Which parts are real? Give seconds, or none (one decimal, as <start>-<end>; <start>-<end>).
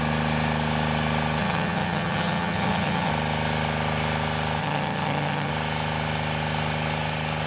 0.0-1.4; 3.1-4.6; 5.5-7.5